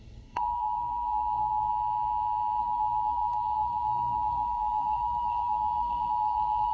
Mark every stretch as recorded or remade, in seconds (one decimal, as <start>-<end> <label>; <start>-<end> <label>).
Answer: 0.0-1.7 remade; 1.7-2.6 recorded; 2.6-6.7 remade